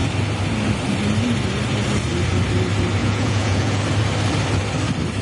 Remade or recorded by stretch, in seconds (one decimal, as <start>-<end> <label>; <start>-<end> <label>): 0.0-3.0 recorded; 3.0-3.8 remade; 3.8-5.2 recorded